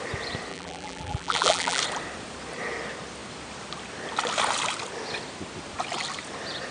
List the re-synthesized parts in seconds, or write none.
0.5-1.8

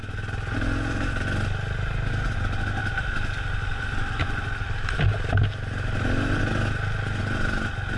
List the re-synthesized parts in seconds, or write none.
7.2-8.0